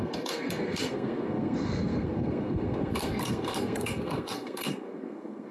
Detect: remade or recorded remade